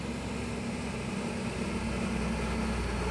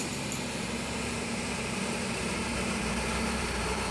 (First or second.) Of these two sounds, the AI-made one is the second